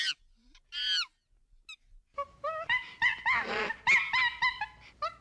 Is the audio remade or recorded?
recorded